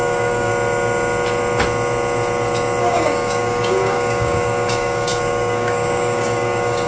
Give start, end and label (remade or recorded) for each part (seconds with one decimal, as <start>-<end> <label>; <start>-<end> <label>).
0.0-0.5 remade; 0.5-2.8 recorded; 2.8-6.9 remade